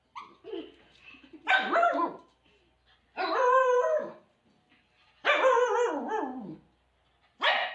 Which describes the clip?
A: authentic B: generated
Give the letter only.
A